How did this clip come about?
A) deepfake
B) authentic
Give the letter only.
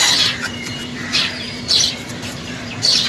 A